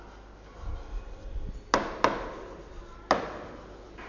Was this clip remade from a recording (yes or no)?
no